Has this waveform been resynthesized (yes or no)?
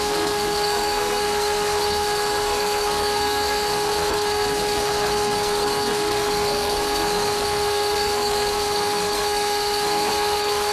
yes